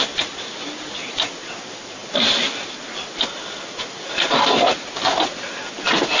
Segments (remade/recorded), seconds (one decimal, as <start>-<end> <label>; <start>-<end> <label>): 0.0-6.2 recorded